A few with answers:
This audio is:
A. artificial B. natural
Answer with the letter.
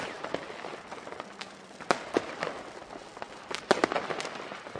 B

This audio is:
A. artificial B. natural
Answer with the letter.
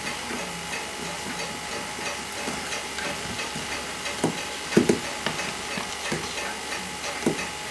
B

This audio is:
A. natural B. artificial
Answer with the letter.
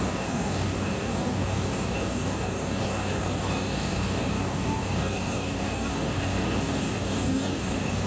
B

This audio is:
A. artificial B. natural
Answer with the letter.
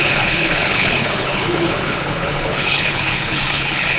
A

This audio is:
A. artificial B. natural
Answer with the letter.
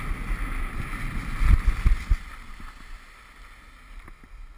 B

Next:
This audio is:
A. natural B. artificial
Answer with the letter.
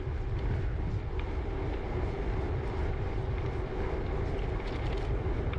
A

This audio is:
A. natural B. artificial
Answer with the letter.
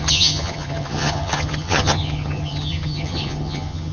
B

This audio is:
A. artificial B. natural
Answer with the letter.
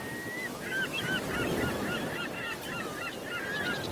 B